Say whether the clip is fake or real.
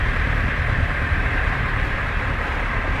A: fake